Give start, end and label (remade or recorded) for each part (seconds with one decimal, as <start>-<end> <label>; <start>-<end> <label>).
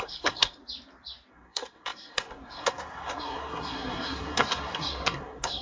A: 0.0-0.6 remade; 0.6-1.3 recorded; 1.3-5.6 remade